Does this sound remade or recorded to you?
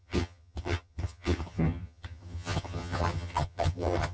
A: remade